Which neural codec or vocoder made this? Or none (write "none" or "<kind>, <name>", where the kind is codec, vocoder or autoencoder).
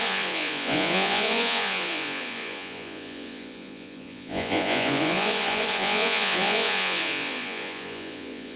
vocoder, Vocos